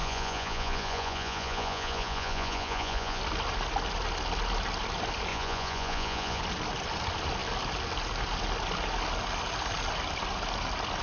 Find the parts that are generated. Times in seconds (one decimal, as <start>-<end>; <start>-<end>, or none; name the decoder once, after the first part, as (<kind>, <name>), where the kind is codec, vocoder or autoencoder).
0.0-3.2 (vocoder, Vocos); 5.3-6.4